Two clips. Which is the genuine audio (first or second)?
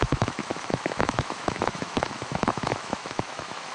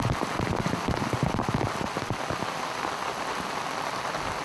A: second